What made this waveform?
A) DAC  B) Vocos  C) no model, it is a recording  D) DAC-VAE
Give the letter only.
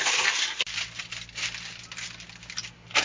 C